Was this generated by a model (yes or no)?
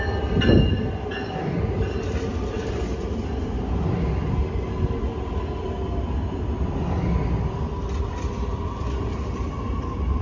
no